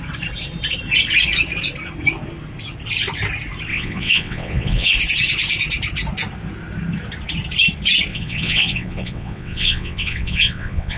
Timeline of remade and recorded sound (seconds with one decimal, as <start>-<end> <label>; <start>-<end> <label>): 0.0-3.7 recorded; 3.7-4.9 remade; 4.9-8.1 recorded; 8.1-11.0 remade